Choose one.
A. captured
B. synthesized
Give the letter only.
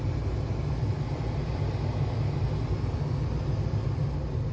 A